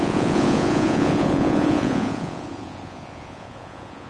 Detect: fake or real fake